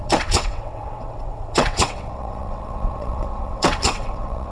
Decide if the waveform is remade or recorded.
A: remade